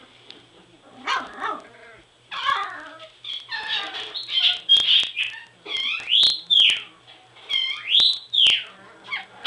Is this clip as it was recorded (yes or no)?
yes